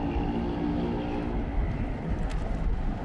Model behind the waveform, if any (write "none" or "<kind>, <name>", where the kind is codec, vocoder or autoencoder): none